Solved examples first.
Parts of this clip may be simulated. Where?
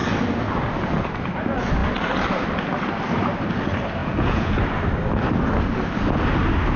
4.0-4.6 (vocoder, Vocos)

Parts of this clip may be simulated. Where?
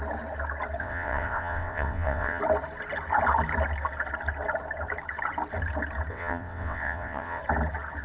0.8-2.4 (vocoder, WaveNeXt); 6.1-7.4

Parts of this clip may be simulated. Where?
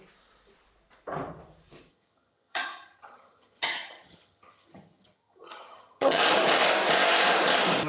1.9-6.2 (vocoder, HiFi-GAN)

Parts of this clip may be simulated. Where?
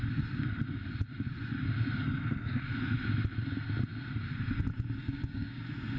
5.0-5.6 (codec, DAC)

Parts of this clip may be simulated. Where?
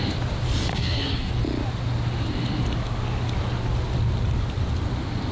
0.7-1.3 (codec, SNAC)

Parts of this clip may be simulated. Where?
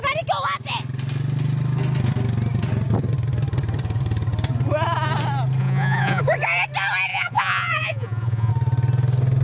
5.6-6.2 (vocoder, Vocos); 7.1-8.5